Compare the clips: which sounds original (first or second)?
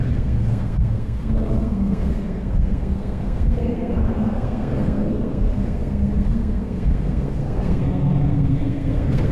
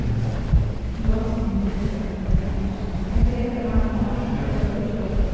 second